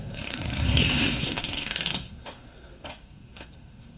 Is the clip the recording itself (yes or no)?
no